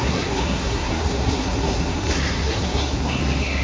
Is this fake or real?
fake